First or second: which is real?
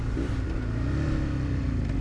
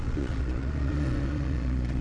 first